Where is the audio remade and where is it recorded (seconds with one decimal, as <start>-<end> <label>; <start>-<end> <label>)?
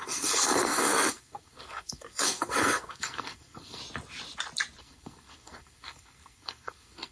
0.0-3.8 remade; 3.8-4.8 recorded; 4.8-7.1 remade